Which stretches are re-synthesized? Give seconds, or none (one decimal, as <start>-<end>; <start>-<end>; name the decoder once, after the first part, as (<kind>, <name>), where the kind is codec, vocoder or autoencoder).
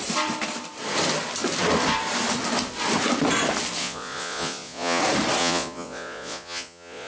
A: 3.8-5.0 (vocoder, Vocos); 5.4-7.1